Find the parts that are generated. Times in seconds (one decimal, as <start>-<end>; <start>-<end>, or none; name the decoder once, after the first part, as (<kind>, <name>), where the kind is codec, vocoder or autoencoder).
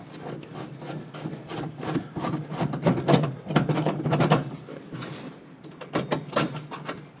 1.4-5.7 (vocoder, BigVGAN v2)